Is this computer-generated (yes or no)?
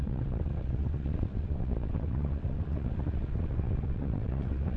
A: yes